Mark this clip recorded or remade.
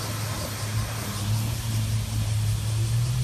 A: recorded